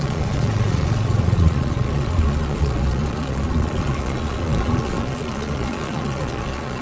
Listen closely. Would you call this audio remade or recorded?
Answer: remade